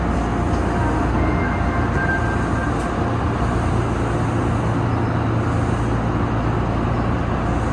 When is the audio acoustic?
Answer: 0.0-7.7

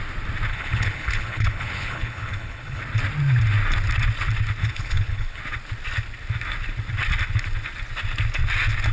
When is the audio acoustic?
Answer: 0.0-0.5; 2.8-4.6; 5.4-8.9

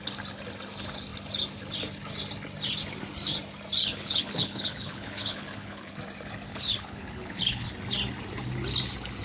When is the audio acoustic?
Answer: 0.0-3.8; 6.0-6.5; 7.7-9.2

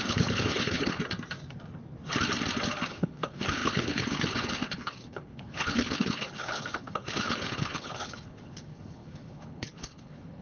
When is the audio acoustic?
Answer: 1.0-2.9

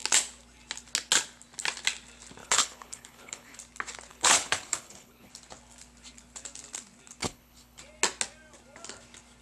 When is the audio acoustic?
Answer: 0.0-2.4; 3.6-4.1; 5.3-7.2; 7.8-9.4